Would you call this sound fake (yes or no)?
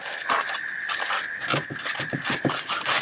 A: no